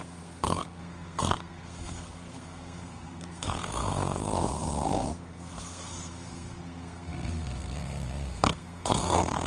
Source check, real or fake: fake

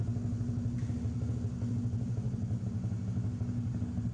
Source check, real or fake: real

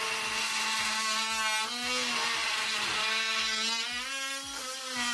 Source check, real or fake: real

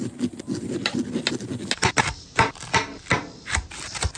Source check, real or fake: real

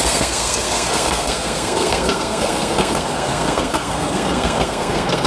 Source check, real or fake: fake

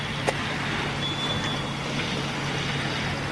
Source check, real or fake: real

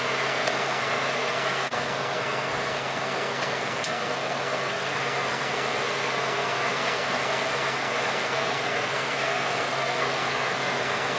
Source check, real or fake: fake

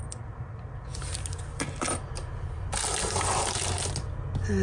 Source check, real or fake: real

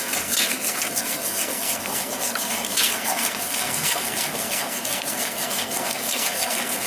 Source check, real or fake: fake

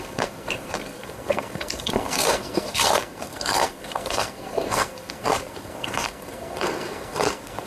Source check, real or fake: fake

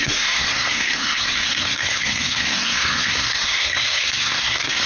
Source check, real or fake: fake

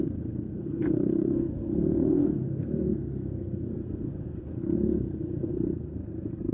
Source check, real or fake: fake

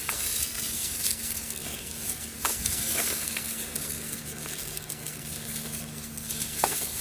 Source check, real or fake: fake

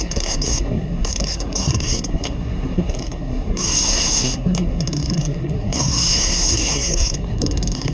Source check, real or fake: fake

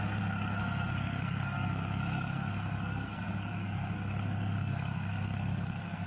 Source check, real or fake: fake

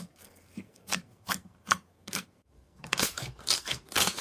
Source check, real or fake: fake